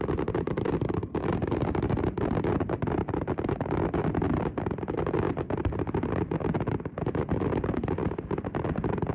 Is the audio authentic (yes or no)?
yes